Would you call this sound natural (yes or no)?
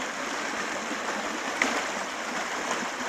yes